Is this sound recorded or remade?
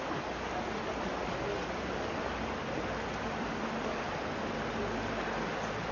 recorded